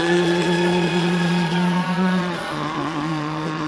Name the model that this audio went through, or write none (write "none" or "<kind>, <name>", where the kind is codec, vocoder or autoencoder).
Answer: vocoder, Vocos